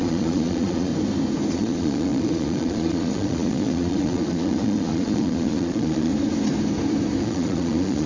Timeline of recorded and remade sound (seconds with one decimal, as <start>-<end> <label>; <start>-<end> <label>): 0.0-0.9 remade; 0.9-1.5 recorded; 1.5-6.1 remade; 6.1-7.2 recorded; 7.2-8.1 remade